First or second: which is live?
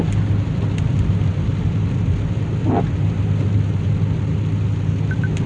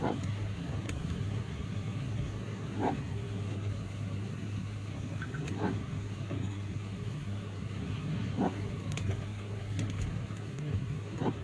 first